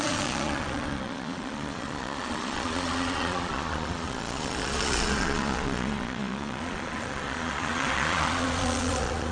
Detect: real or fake fake